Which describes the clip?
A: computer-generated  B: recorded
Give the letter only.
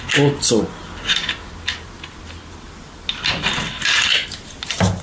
B